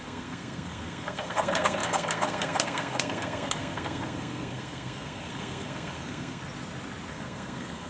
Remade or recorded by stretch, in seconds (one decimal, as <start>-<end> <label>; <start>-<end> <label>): 0.0-6.4 remade; 6.4-7.1 recorded; 7.1-7.9 remade